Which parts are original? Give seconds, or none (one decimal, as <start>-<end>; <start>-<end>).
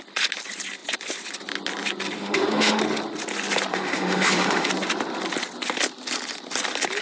0.0-2.2; 2.8-3.7; 4.7-7.0